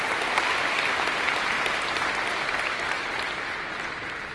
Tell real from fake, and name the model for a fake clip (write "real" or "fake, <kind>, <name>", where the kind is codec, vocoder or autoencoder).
real